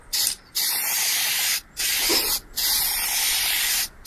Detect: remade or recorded recorded